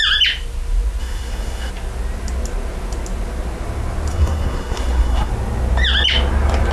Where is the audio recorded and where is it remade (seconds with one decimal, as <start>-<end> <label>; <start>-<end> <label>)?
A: 0.0-1.0 recorded; 1.0-1.7 remade; 1.7-4.1 recorded; 4.1-5.3 remade; 5.3-6.7 recorded